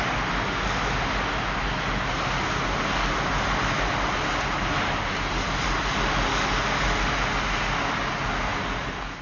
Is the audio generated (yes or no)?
no